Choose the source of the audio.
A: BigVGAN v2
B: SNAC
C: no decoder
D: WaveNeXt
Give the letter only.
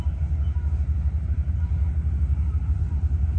C